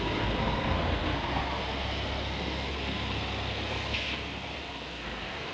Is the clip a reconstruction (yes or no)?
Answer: yes